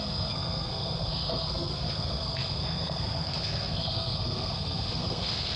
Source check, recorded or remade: remade